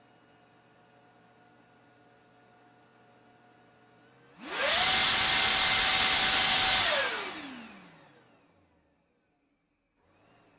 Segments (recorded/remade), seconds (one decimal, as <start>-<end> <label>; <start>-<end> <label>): 0.0-10.6 recorded